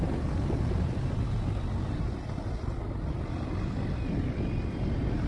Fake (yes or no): no